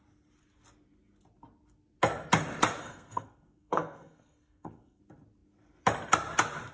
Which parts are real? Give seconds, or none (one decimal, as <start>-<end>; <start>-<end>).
0.0-2.8; 5.0-6.7